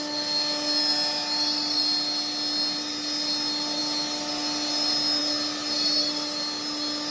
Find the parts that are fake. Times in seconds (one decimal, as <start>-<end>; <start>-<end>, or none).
none